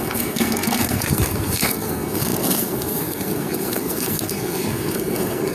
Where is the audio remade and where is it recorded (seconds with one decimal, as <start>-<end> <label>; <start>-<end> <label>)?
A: 0.0-5.5 remade